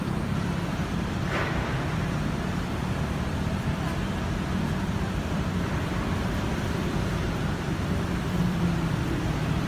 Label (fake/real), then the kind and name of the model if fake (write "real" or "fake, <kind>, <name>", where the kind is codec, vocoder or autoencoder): fake, vocoder, BigVGAN v2